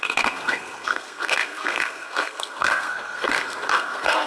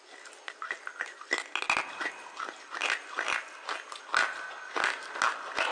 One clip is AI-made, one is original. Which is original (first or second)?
second